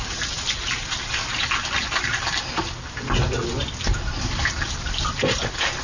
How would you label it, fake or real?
real